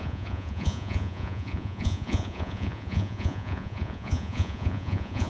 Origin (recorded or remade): remade